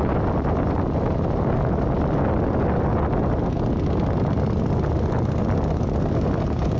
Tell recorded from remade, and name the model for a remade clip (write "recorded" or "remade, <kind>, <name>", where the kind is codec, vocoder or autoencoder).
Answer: recorded